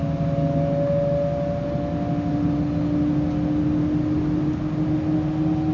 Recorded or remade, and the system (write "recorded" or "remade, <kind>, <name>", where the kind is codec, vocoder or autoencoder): recorded